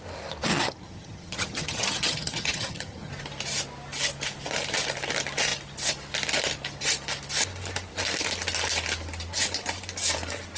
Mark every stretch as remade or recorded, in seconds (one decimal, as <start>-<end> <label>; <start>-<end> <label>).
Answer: 0.0-0.5 recorded; 0.5-3.1 remade; 3.1-10.6 recorded